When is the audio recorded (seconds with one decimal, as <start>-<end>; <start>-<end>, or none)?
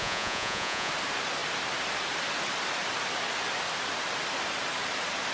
0.9-5.3